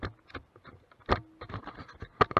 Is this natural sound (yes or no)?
yes